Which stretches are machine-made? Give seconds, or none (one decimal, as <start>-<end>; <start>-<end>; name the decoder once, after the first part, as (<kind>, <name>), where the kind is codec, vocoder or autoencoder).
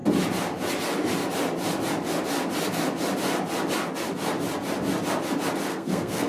5.7-6.3 (codec, SNAC)